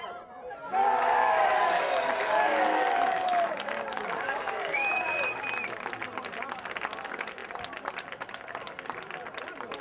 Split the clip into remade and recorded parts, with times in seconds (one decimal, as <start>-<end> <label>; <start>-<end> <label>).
0.0-0.8 recorded; 0.8-5.4 remade; 5.4-9.8 recorded